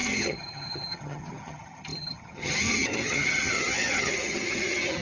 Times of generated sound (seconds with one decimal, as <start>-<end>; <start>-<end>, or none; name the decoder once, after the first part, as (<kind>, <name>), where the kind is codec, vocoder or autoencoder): 0.0-5.0 (vocoder, HiFi-GAN)

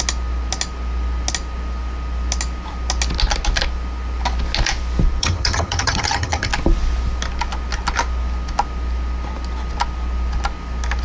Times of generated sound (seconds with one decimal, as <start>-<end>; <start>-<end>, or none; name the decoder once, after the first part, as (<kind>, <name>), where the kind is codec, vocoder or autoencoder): 5.2-6.5 (vocoder, HiFi-GAN)

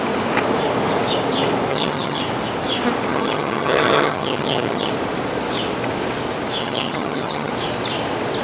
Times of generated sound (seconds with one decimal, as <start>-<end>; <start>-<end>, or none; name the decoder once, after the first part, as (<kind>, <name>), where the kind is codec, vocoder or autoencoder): 1.7-2.2 (vocoder, HiFi-GAN); 3.1-4.9; 6.6-7.5

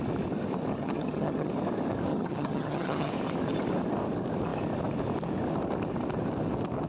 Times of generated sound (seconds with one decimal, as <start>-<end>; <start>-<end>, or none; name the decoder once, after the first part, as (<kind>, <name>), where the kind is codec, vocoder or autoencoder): 0.7-1.5 (vocoder, HiFi-GAN); 2.1-3.1

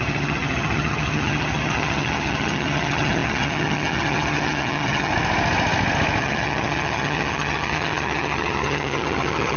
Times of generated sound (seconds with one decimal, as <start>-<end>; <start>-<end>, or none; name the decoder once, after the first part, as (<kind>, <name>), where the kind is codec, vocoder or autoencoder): 0.0-5.1 (vocoder, HiFi-GAN); 6.2-9.6

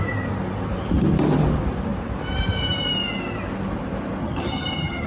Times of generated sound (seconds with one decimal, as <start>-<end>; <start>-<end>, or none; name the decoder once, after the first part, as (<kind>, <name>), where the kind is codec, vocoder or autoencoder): 4.2-5.1 (vocoder, HiFi-GAN)

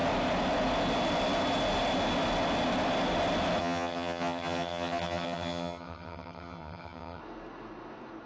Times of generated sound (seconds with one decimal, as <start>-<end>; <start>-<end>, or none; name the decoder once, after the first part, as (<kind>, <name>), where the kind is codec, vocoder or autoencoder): 3.6-7.2 (vocoder, HiFi-GAN)